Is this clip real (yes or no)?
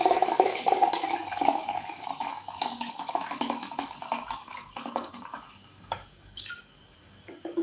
no